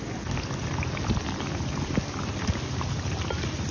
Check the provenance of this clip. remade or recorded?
remade